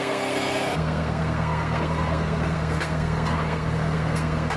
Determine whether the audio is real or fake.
fake